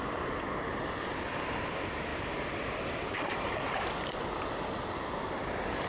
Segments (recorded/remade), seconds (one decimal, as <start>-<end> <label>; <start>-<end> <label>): 0.0-2.1 recorded; 2.1-3.9 remade; 3.9-5.9 recorded